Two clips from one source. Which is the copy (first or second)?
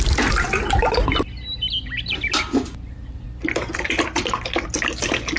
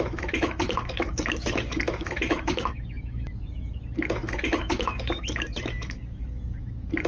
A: second